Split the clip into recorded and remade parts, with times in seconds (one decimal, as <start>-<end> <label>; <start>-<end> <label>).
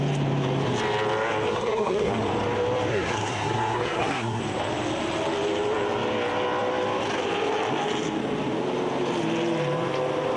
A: 0.0-1.5 recorded; 1.5-2.1 remade; 2.1-2.9 recorded; 2.9-4.4 remade; 4.4-10.4 recorded